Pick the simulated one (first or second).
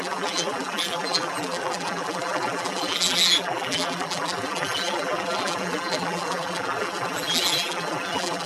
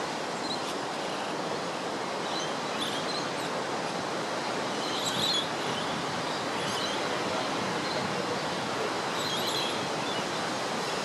first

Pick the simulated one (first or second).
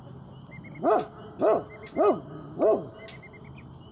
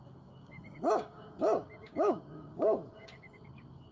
second